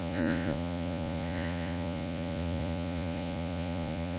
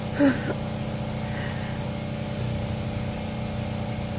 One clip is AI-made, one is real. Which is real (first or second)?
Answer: second